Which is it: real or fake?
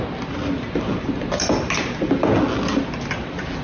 real